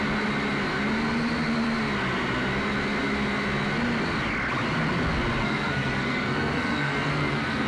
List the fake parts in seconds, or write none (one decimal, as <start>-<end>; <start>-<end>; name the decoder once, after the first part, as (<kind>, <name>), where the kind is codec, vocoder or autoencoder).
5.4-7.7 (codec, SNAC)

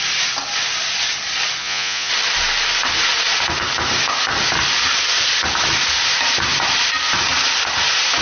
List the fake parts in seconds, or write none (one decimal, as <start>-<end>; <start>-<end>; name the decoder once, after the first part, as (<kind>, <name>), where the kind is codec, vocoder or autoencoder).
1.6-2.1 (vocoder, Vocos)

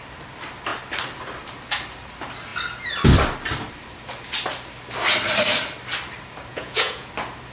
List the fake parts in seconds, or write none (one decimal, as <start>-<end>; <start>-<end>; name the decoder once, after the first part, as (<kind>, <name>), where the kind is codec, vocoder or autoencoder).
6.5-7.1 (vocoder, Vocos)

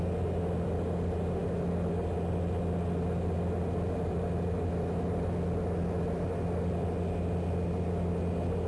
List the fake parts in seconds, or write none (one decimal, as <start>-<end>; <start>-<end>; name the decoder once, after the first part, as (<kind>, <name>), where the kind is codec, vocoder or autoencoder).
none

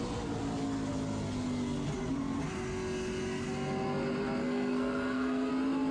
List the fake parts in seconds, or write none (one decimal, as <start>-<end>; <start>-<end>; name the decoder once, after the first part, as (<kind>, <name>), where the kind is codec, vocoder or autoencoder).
4.4-5.5 (codec, SNAC)